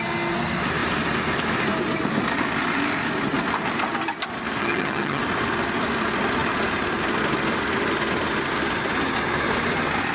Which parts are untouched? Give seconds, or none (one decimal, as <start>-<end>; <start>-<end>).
0.0-4.6; 5.2-10.1